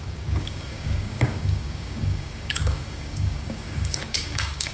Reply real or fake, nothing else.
fake